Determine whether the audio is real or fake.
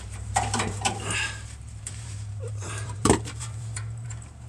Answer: fake